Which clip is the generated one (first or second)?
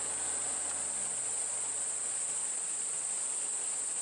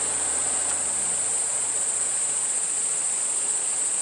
second